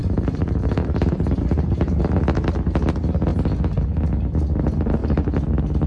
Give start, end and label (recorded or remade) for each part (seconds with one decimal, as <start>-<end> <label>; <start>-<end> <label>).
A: 0.0-2.0 remade; 2.0-5.0 recorded; 5.0-5.9 remade